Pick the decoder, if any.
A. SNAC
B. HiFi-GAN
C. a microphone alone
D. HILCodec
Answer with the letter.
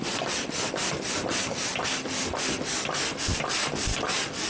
C